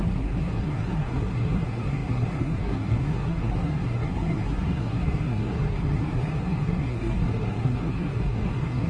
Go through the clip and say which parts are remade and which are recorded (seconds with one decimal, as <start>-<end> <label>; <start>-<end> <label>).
0.0-8.9 remade